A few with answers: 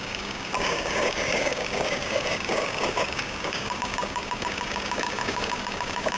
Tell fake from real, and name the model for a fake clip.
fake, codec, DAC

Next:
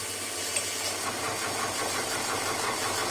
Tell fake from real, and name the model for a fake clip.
real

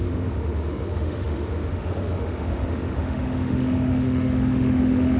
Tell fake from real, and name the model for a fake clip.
fake, autoencoder, DAC-VAE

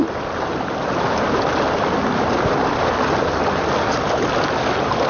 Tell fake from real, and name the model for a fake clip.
real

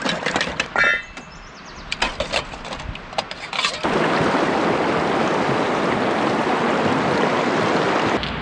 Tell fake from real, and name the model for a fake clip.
real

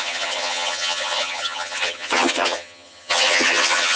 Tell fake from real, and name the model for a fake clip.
fake, vocoder, HiFi-GAN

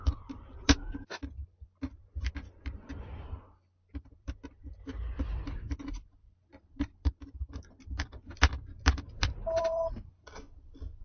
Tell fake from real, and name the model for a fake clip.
fake, vocoder, BigVGAN v2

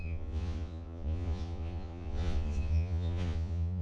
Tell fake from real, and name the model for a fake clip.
fake, vocoder, Vocos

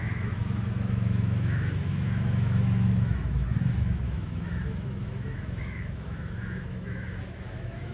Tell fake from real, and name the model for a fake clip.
fake, autoencoder, DAC-VAE